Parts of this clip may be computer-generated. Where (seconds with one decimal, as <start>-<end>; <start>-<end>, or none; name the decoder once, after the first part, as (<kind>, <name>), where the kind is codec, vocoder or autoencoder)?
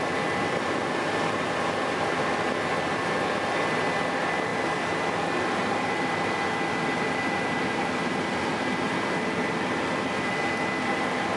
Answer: none